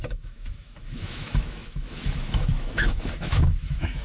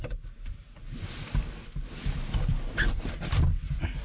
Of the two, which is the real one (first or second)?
second